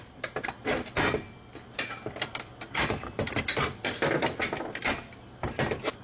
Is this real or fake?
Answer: real